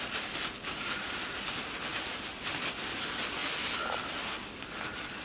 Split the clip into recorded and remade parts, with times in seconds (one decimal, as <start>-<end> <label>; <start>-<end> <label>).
0.0-5.2 recorded